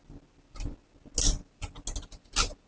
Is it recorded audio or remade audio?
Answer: recorded